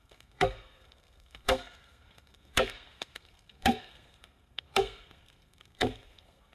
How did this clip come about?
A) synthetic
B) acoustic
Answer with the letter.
A